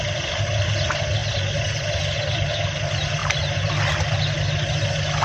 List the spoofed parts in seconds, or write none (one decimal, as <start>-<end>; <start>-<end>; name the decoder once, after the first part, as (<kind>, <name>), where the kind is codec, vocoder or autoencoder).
3.2-3.7 (vocoder, BigVGAN v2)